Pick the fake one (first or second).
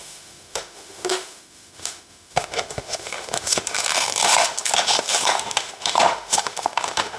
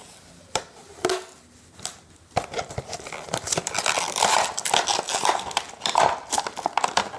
first